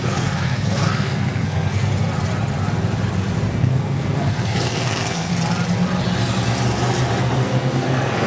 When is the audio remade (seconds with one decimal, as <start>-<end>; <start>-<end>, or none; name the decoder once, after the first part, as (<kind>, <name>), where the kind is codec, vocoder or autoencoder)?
0.0-1.9 (codec, SNAC); 3.5-5.3; 7.2-8.3